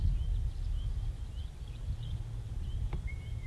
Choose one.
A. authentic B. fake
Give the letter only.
A